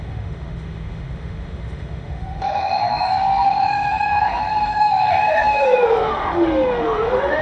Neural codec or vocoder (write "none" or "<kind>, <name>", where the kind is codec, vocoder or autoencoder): autoencoder, DAC-VAE